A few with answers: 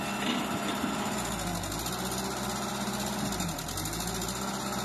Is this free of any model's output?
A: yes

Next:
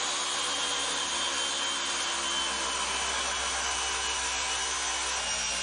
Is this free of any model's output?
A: yes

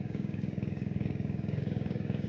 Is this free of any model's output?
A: no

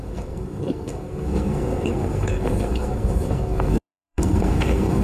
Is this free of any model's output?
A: no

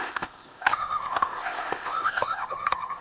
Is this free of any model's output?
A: no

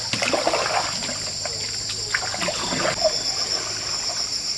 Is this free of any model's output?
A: yes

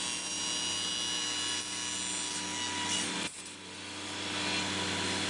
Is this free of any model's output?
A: yes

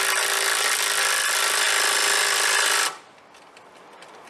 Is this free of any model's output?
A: yes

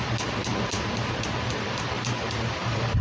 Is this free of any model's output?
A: no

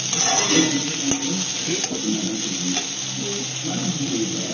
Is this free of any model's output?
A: yes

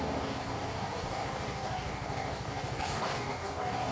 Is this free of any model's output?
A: no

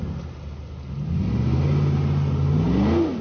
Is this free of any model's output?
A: yes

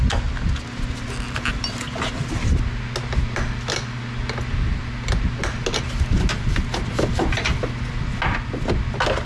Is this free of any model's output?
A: yes